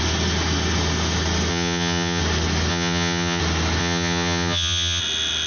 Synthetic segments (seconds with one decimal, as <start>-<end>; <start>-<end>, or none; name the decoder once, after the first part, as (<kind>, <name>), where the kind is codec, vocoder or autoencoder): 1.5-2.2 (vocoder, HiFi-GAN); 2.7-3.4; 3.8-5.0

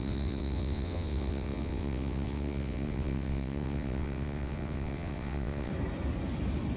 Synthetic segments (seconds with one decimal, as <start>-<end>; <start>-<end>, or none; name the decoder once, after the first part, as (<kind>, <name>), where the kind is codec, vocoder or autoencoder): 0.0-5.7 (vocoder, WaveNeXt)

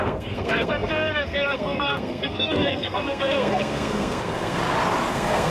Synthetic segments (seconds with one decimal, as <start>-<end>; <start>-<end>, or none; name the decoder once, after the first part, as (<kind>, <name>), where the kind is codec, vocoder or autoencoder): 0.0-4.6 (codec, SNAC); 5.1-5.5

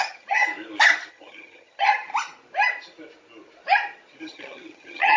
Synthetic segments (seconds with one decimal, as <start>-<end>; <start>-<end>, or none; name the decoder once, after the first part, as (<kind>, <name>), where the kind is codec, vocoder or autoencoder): 0.0-0.5 (vocoder, HiFi-GAN); 1.1-2.1; 4.2-5.2